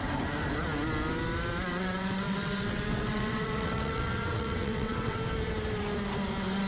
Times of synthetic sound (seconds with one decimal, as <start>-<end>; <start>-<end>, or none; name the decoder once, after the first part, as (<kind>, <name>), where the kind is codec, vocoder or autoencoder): 1.7-5.2 (vocoder, WaveNeXt)